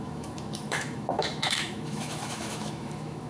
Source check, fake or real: fake